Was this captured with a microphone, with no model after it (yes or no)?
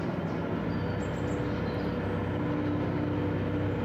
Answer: yes